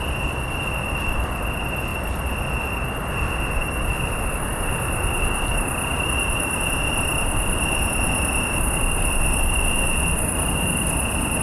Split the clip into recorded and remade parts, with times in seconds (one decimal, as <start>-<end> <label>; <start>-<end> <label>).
0.0-11.4 recorded